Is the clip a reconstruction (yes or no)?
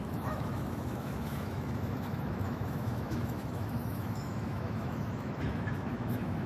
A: yes